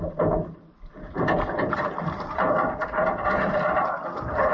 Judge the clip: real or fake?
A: fake